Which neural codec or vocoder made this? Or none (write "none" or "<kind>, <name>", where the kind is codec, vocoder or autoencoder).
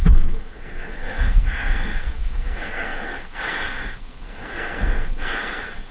codec, SNAC